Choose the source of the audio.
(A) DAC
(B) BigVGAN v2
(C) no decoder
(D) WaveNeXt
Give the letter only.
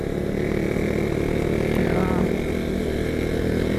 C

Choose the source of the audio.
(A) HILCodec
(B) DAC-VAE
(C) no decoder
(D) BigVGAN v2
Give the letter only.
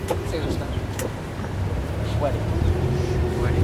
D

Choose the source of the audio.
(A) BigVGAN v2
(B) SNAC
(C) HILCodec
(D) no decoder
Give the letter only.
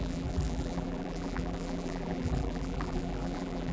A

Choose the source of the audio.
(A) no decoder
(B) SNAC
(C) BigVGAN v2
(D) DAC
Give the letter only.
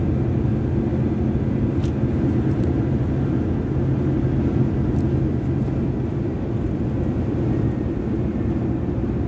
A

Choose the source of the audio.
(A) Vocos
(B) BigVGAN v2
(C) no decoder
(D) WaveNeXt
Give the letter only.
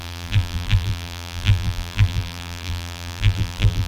B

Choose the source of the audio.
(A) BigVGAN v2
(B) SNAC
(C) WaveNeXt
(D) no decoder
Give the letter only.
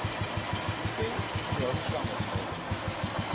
D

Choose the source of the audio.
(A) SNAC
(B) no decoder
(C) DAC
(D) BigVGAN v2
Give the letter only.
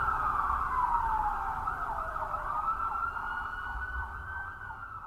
D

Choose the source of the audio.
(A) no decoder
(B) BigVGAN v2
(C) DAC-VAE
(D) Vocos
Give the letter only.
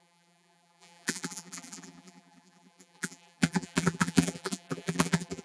B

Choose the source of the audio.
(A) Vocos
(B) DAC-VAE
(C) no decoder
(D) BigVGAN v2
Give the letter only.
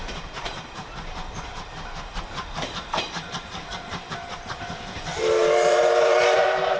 D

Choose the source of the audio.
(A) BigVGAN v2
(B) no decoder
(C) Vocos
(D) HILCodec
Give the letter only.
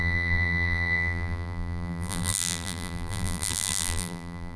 A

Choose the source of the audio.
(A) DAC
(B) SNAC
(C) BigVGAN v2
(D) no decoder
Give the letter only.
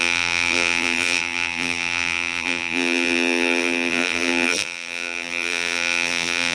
C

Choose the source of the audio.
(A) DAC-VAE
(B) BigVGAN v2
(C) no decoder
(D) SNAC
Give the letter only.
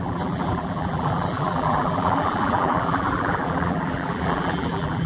B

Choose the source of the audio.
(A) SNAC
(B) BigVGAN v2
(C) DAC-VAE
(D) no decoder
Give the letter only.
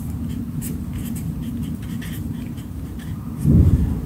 B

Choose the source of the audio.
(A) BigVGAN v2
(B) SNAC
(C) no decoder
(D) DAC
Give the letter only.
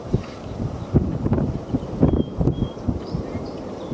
A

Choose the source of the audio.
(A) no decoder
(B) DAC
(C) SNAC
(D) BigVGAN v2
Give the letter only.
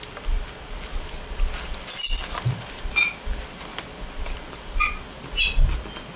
A